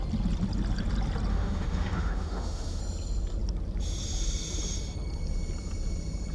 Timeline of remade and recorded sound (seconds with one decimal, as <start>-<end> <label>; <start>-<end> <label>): 0.0-1.3 recorded; 1.3-2.8 remade; 2.8-6.3 recorded